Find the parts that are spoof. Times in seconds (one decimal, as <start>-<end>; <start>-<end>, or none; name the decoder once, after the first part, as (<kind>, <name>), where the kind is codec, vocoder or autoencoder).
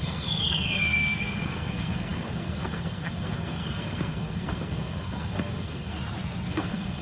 0.0-6.0 (codec, SNAC); 6.5-7.0